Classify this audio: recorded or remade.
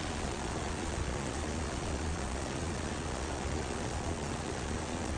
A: remade